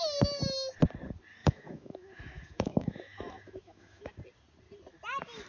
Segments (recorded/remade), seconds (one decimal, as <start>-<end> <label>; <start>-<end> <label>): 0.0-1.4 recorded; 1.4-4.1 remade; 4.1-5.5 recorded